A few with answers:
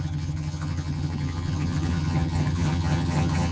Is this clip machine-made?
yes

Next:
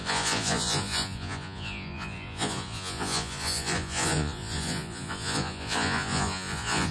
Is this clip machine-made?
yes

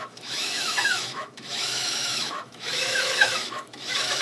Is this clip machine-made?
yes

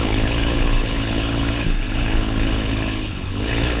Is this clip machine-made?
yes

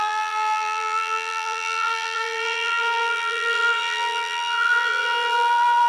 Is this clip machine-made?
yes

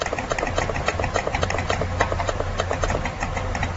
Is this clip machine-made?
no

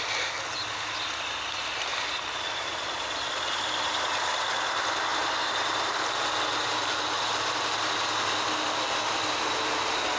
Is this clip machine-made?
no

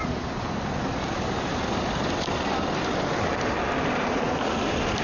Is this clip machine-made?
no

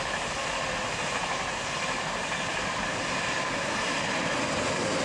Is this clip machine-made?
no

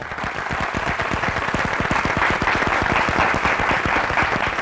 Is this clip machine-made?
no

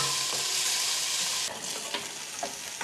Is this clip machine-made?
no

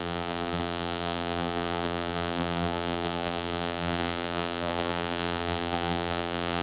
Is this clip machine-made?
yes